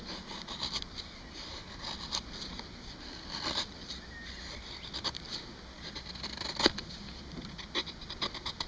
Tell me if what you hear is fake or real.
real